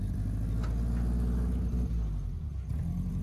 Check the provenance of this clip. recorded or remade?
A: recorded